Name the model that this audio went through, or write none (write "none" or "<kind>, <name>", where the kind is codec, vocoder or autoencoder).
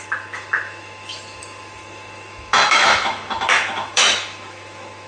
autoencoder, DAC-VAE